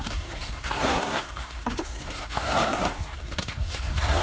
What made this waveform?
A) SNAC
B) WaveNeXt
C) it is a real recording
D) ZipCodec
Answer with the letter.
A